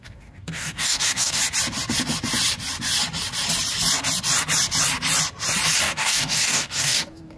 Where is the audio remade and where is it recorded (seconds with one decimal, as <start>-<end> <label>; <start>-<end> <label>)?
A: 0.0-1.4 remade; 1.4-5.8 recorded; 5.8-7.4 remade